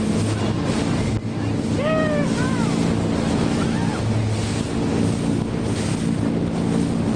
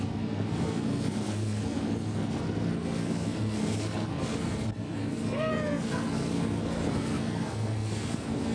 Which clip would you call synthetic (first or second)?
second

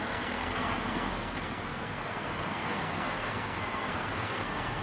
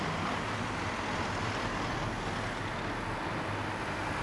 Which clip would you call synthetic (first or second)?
first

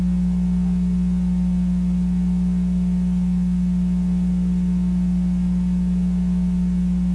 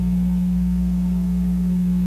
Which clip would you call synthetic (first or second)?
second